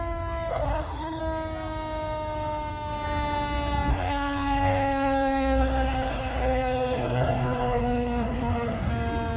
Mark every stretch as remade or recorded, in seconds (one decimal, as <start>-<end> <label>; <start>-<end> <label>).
0.0-0.5 recorded; 0.5-1.2 remade; 1.2-3.9 recorded; 3.9-8.9 remade; 8.9-9.4 recorded